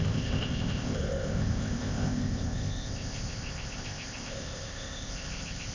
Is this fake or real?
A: fake